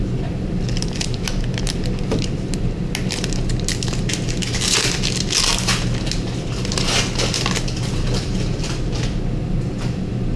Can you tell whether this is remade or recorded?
recorded